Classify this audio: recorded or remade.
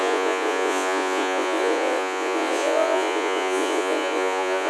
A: remade